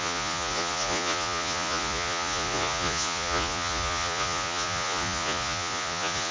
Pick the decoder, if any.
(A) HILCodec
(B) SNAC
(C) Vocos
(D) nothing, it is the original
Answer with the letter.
C